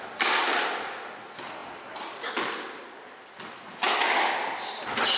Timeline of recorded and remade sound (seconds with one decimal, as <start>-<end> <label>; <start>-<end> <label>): 0.0-5.2 recorded